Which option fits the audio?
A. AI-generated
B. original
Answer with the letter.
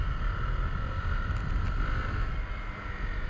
A